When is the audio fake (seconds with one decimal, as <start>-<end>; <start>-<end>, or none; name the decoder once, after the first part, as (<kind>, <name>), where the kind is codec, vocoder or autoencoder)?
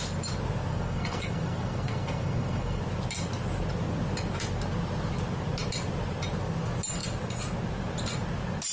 0.7-2.8 (codec, SNAC)